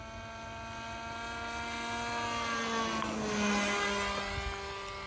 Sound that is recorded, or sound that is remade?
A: recorded